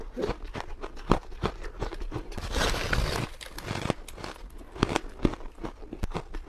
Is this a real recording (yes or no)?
yes